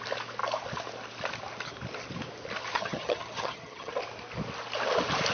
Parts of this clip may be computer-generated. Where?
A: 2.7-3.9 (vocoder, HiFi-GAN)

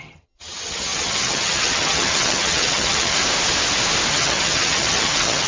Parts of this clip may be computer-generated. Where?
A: 0.0-3.2 (vocoder, HiFi-GAN); 4.1-5.5

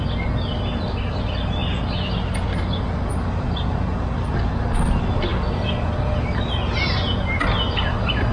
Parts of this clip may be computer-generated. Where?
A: none

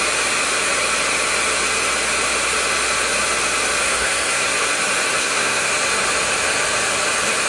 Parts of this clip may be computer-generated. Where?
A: 3.8-4.5 (codec, SNAC); 5.2-5.7

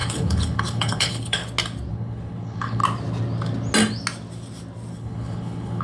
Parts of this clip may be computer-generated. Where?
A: 0.0-1.4 (codec, HILCodec); 1.9-2.8; 4.9-5.8

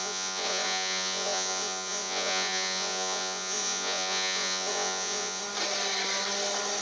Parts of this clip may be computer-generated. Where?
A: 0.0-5.4 (vocoder, Vocos)

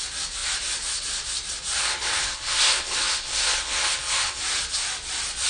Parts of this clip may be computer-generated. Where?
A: 1.8-4.4 (codec, HILCodec)

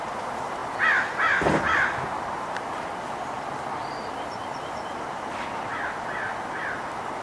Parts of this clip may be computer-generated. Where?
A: none